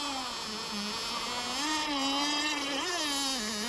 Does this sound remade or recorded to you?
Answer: recorded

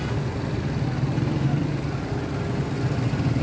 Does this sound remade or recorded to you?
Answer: recorded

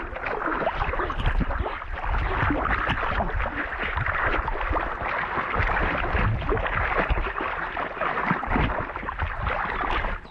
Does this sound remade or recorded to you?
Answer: recorded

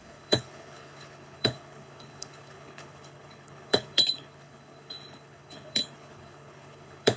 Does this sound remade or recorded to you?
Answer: remade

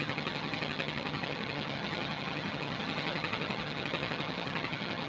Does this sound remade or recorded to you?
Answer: remade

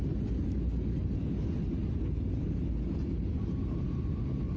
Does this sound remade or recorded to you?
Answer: recorded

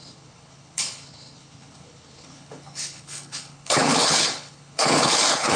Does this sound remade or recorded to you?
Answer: remade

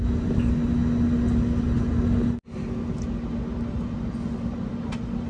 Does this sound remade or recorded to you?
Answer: recorded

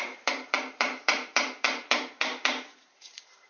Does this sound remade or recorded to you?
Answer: remade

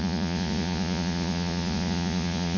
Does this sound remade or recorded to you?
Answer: remade